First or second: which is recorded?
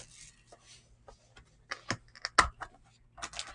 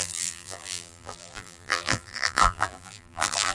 first